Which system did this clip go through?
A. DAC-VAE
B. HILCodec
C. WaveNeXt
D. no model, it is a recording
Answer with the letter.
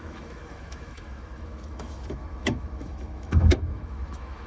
A